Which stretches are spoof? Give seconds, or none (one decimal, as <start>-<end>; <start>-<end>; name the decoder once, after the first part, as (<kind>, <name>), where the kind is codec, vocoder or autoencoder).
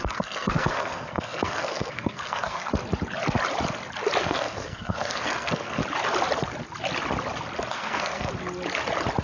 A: 0.0-2.7 (codec, SNAC); 4.2-5.8; 7.7-8.3